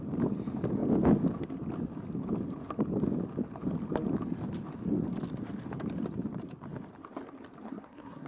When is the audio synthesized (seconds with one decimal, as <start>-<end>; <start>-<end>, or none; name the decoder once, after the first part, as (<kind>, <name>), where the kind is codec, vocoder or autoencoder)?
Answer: 7.7-8.3 (codec, SNAC)